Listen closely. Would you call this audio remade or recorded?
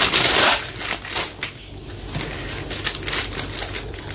recorded